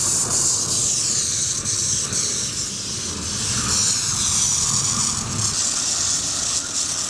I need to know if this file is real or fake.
real